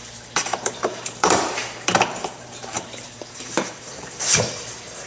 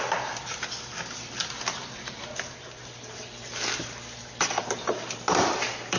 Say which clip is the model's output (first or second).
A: first